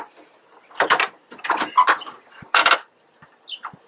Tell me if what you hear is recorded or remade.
recorded